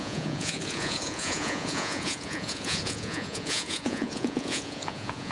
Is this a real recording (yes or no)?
no